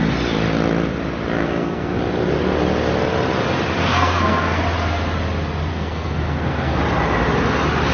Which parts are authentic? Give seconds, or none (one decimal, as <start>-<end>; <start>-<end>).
0.0-1.4; 2.0-3.8; 4.6-5.7; 6.8-7.9